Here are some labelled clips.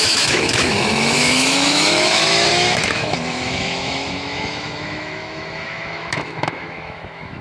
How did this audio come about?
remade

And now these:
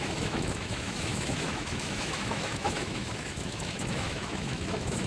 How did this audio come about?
remade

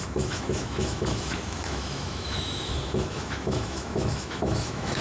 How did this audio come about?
remade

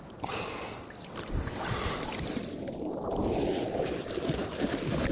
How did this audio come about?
recorded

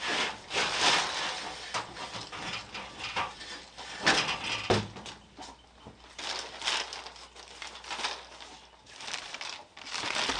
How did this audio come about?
recorded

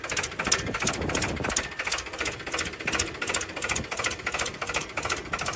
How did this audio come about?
recorded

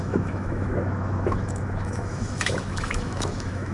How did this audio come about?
remade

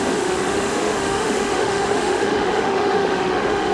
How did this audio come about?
remade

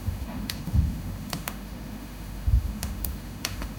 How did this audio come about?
remade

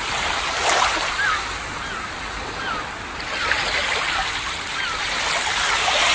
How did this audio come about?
recorded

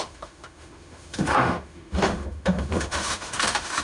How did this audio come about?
remade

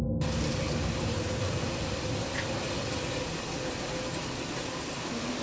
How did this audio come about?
recorded